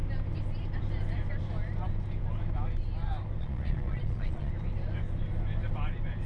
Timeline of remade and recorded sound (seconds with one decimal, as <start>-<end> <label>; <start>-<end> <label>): 0.0-3.4 recorded; 3.4-4.5 remade; 4.5-6.3 recorded